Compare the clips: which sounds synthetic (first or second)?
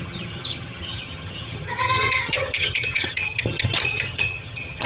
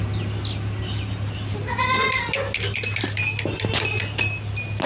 first